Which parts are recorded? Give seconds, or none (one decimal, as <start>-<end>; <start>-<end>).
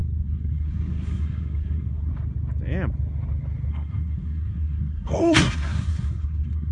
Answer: 2.1-3.7